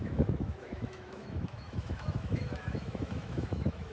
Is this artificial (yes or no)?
yes